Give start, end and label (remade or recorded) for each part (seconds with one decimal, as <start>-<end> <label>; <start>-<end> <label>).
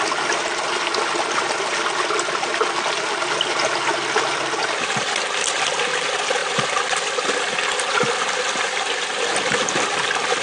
0.0-6.4 recorded; 6.4-8.9 remade; 8.9-10.4 recorded